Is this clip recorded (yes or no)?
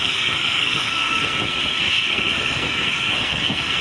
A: no